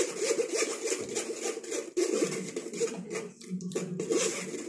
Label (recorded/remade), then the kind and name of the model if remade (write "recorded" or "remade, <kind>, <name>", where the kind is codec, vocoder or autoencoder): recorded